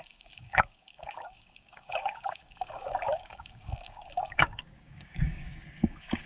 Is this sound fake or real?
fake